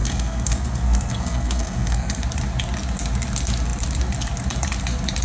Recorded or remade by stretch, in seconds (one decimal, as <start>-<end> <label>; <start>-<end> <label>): 0.0-2.2 remade; 2.2-5.2 recorded